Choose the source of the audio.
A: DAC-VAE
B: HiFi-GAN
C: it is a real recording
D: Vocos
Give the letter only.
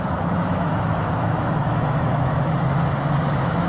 A